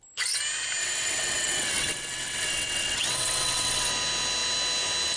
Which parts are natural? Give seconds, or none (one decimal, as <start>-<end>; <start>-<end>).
0.0-0.8; 3.9-5.2